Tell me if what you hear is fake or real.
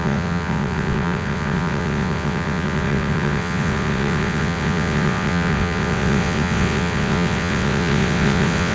fake